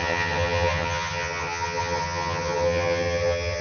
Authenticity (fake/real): fake